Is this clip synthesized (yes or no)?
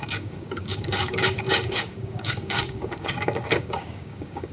yes